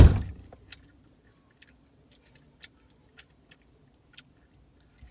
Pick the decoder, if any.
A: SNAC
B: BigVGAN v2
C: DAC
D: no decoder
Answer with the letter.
D